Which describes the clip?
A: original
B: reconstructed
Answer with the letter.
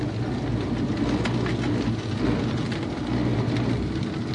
A